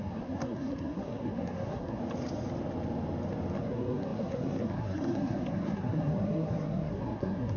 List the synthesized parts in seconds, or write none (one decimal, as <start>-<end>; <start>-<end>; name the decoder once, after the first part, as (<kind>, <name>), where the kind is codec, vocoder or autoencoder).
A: 0.0-2.0 (codec, SNAC); 3.6-7.6